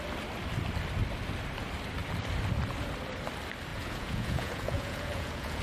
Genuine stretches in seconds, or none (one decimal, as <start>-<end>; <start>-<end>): 0.0-3.7